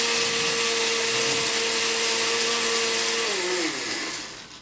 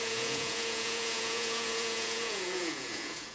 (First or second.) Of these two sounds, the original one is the first